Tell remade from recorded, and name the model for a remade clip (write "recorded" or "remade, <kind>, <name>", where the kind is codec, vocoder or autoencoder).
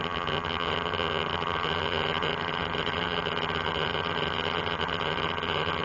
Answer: remade, vocoder, HiFi-GAN